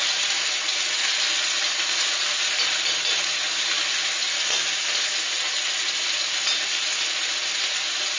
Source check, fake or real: real